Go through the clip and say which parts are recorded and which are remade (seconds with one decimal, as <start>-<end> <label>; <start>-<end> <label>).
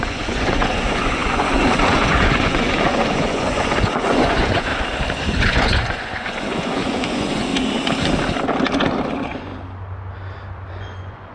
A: 0.0-4.7 remade; 4.7-5.4 recorded; 5.4-7.5 remade; 7.5-9.1 recorded; 9.1-9.5 remade; 9.5-10.7 recorded; 10.7-11.3 remade